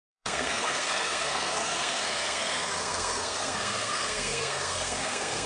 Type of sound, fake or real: fake